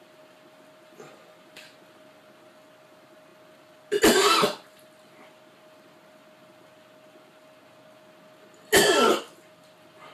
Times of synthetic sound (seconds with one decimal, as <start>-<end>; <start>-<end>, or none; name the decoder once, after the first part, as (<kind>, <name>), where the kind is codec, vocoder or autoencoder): none